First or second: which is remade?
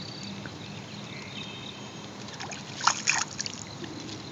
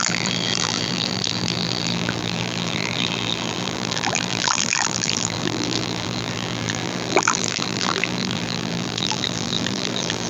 second